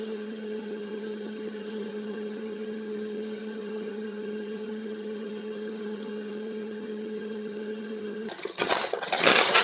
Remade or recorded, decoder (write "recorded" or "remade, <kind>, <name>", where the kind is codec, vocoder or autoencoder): remade, vocoder, HiFi-GAN